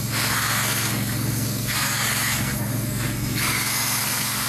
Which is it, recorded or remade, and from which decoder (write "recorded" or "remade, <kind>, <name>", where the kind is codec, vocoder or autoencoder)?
remade, codec, SNAC